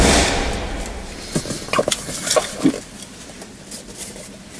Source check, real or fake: fake